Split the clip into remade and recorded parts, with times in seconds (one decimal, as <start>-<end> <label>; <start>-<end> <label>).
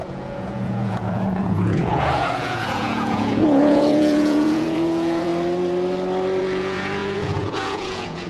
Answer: 0.0-5.3 remade; 5.3-6.4 recorded; 6.4-8.3 remade